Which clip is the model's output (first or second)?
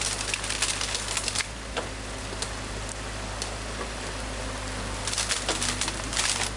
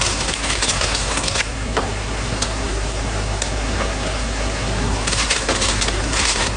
second